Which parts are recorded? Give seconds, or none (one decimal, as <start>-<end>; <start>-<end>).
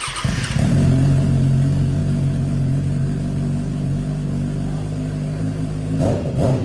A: 0.0-6.6